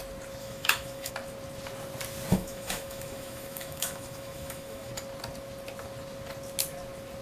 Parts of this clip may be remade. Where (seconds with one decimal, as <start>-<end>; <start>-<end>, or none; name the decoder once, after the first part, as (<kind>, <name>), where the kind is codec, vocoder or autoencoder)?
0.4-1.1 (autoencoder, DAC-VAE); 2.3-4.9